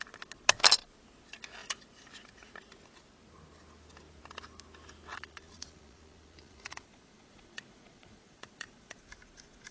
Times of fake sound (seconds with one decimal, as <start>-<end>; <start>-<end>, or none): 5.1-9.0